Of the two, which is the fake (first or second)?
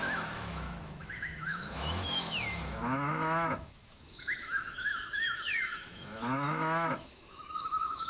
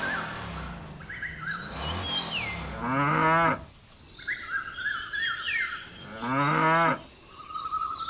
first